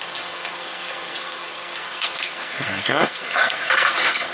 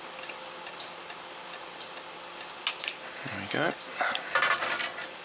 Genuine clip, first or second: second